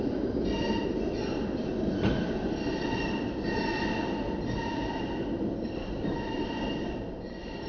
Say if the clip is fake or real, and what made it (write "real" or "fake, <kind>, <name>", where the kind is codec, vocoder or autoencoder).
real